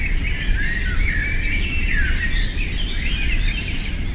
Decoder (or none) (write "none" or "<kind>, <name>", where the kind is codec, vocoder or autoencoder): none